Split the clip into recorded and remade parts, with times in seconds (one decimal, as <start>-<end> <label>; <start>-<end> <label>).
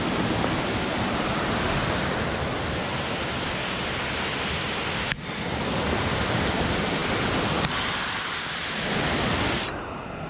0.0-10.3 recorded